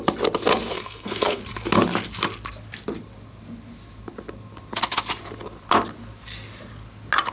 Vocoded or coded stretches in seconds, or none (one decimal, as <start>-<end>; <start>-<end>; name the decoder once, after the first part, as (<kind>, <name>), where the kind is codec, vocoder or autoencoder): 0.7-1.4 (codec, SNAC)